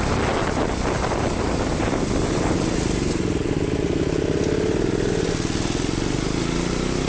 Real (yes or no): yes